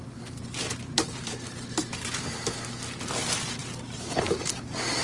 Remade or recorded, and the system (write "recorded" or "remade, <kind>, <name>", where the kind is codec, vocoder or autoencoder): recorded